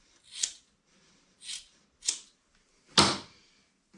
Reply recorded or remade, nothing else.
recorded